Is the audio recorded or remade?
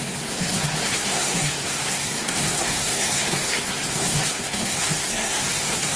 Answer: remade